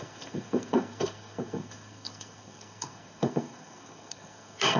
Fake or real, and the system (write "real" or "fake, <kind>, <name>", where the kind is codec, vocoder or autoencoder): fake, codec, SNAC